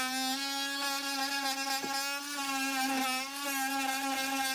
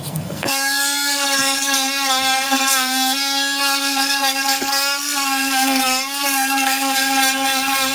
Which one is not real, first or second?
second